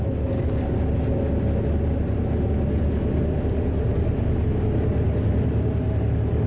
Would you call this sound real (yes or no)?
yes